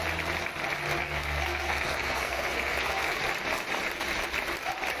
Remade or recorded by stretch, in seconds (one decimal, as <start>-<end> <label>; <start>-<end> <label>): 0.0-1.0 recorded; 1.0-3.2 remade; 3.2-5.0 recorded